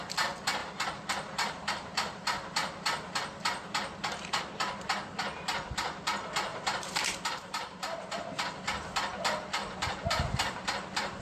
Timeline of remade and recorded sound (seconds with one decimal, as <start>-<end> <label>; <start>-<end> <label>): 0.0-0.6 recorded; 0.6-4.4 remade; 4.4-6.5 recorded; 6.5-8.2 remade; 8.2-11.2 recorded